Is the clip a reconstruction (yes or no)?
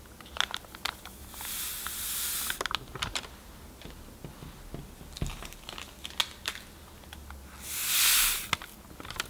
no